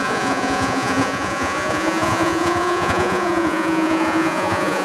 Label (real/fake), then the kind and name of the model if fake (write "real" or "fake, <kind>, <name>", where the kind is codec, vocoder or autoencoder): fake, vocoder, Vocos